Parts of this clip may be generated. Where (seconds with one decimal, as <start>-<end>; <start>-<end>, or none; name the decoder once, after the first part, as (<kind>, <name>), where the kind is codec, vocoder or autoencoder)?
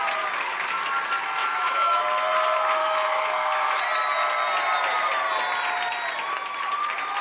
1.4-2.0 (autoencoder, DAC-VAE); 2.8-3.8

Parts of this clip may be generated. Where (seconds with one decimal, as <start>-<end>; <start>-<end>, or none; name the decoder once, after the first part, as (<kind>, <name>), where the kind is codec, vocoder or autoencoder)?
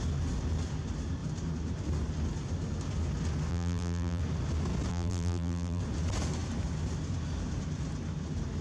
3.5-4.2 (vocoder, BigVGAN v2); 4.9-5.8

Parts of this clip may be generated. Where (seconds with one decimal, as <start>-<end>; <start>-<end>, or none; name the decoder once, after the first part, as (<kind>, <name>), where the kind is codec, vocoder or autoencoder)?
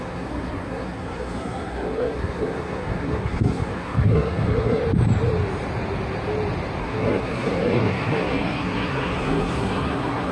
0.0-4.8 (codec, SNAC); 6.8-10.3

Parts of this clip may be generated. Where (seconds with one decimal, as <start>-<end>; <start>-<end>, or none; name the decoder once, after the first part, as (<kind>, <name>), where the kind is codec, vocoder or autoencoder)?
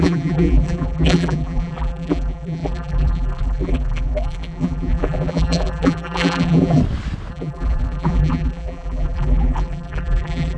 0.0-6.8 (vocoder, BigVGAN v2); 7.3-10.6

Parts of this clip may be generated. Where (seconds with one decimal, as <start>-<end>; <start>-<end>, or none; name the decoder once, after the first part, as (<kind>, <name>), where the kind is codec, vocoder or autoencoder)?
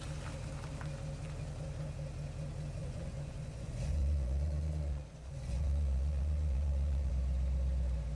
2.8-7.1 (vocoder, Vocos)